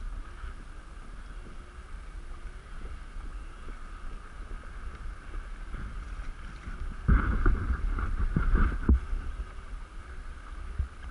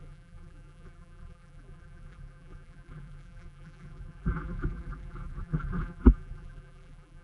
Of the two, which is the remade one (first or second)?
second